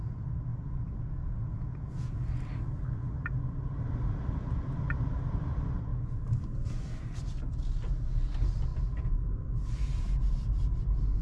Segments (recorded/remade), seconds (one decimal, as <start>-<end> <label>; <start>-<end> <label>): 0.0-0.5 recorded; 0.5-2.2 remade; 2.2-5.9 recorded; 5.9-6.4 remade; 6.4-11.2 recorded